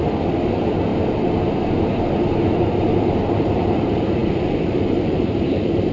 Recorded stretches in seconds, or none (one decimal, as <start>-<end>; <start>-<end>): 0.9-3.3